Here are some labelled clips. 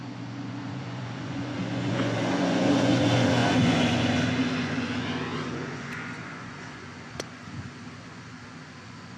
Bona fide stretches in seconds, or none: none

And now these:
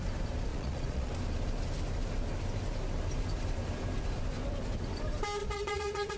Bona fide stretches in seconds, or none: 0.0-0.5; 1.1-5.4

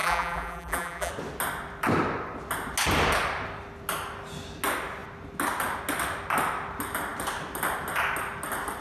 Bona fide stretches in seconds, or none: 1.1-8.8

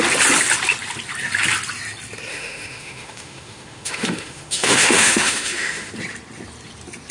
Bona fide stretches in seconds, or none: 0.0-2.3; 5.9-7.1